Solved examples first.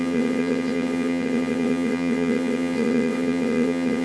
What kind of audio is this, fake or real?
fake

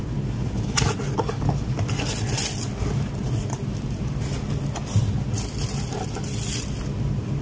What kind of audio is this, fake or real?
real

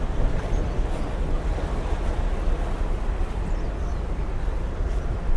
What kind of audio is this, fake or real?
real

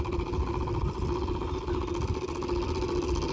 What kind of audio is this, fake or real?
real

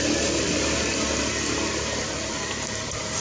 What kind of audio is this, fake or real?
real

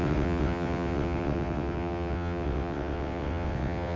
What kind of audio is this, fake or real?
fake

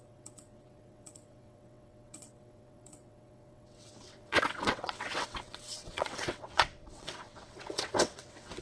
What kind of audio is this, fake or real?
fake